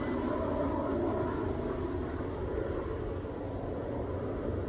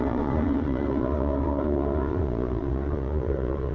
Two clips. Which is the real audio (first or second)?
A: first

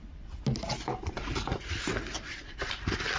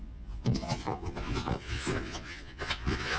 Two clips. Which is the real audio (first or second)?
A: first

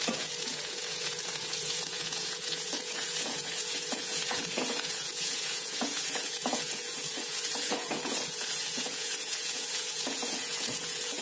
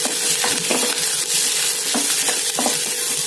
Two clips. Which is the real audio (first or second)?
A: second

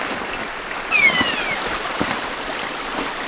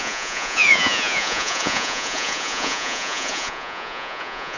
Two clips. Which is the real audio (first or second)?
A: first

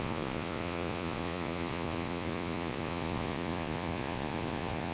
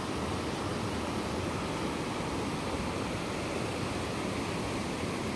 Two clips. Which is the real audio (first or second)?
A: second